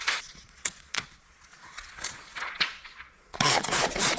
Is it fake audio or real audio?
fake